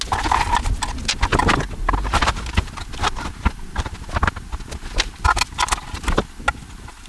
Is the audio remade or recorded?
recorded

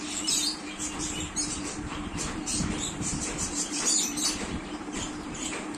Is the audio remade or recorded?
remade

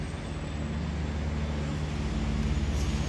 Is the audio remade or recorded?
recorded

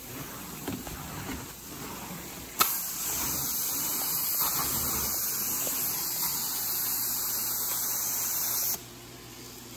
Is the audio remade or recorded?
recorded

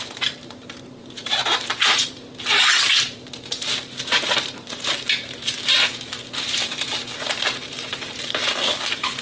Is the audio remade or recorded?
remade